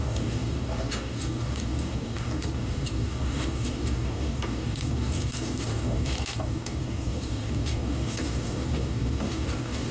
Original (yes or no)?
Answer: no